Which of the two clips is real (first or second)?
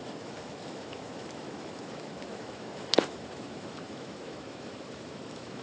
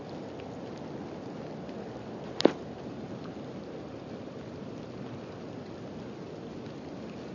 second